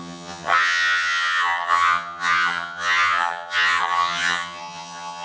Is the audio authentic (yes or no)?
no